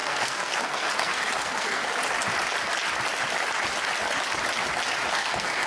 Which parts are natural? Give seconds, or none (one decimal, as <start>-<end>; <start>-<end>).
1.8-5.1